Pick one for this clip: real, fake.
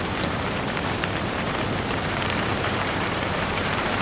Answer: fake